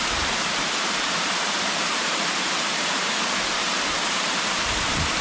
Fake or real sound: fake